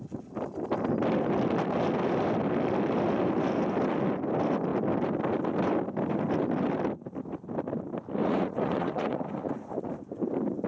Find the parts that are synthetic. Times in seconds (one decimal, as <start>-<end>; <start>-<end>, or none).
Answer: 8.2-9.9